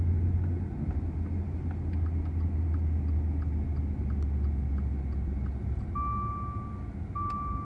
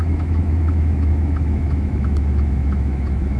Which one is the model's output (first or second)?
second